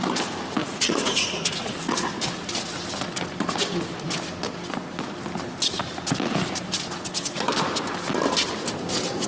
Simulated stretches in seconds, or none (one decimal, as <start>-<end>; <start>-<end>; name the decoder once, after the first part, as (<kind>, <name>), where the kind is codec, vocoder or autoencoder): 0.6-2.2 (vocoder, Vocos)